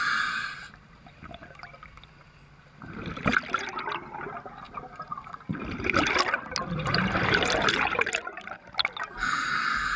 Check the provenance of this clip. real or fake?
real